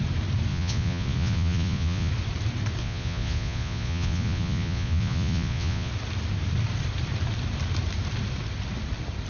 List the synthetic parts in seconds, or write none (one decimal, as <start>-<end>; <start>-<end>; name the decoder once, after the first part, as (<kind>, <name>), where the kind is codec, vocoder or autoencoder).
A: 0.5-2.1 (vocoder, Vocos); 2.8-5.9

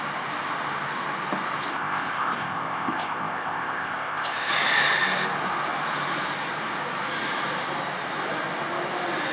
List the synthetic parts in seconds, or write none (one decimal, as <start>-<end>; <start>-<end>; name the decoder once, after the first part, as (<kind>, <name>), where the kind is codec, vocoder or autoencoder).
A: 1.7-4.5 (codec, ZipCodec)